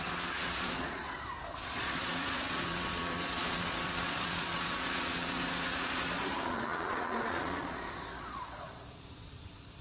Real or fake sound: fake